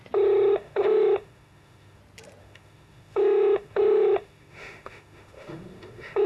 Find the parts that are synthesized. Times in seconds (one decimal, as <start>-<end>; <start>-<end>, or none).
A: 0.5-2.0; 2.4-6.3